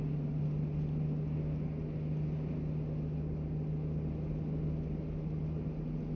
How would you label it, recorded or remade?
recorded